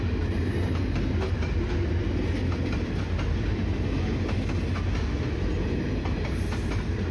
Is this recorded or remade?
recorded